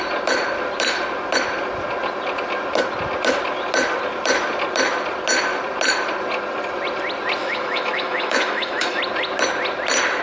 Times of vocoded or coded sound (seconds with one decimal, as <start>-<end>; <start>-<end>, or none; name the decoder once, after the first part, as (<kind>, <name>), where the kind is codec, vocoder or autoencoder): 7.4-9.0 (autoencoder, DAC-VAE)